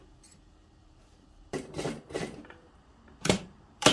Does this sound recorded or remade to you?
remade